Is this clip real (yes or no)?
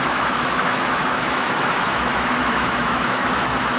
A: no